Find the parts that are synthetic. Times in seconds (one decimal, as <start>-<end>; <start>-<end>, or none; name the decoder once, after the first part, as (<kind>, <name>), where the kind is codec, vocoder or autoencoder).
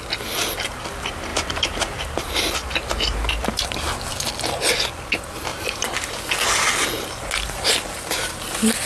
1.3-3.6 (vocoder, BigVGAN v2); 5.5-6.1